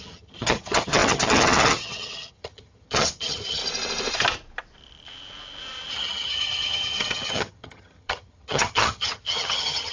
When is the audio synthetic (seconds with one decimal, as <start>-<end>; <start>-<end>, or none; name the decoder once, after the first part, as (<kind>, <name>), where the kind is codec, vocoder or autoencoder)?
0.0-3.6 (vocoder, HiFi-GAN); 5.9-9.9